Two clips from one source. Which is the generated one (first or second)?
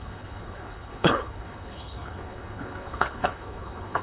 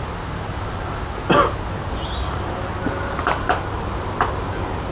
first